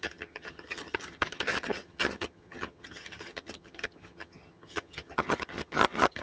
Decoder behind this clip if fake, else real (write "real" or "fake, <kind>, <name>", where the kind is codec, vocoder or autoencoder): fake, vocoder, HiFi-GAN